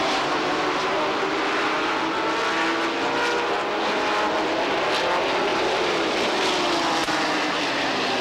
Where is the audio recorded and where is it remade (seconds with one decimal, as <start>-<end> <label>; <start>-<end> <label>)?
0.0-5.5 recorded; 5.5-6.3 remade; 6.3-7.0 recorded; 7.0-7.6 remade; 7.6-8.2 recorded